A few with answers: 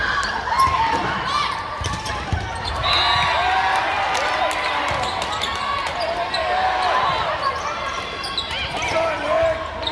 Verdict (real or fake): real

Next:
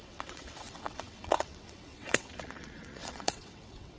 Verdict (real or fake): fake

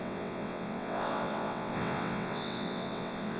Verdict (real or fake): fake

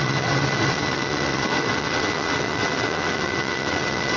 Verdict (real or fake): fake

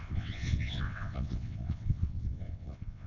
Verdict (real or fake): fake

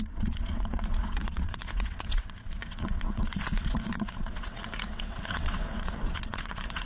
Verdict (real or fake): fake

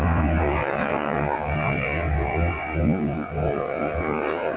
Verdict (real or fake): fake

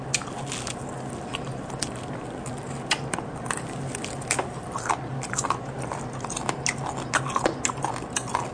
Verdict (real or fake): real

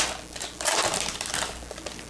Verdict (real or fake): real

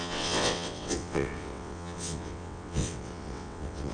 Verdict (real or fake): fake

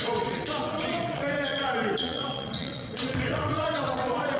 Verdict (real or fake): fake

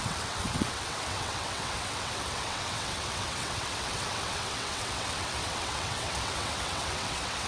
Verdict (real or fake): fake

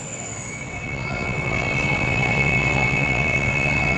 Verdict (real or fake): fake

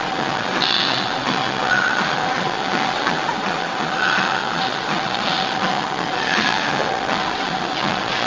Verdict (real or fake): fake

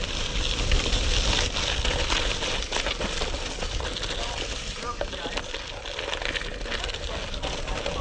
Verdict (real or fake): real